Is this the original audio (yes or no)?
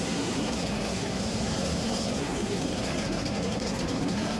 no